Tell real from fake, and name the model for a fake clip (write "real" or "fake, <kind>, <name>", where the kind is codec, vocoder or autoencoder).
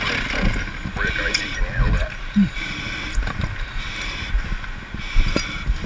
real